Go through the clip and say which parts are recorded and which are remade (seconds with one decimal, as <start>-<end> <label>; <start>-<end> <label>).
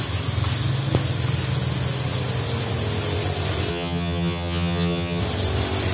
0.0-3.7 recorded; 3.7-5.2 remade; 5.2-5.9 recorded